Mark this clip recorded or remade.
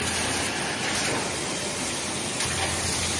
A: recorded